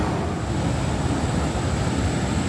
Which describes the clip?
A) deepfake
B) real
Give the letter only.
B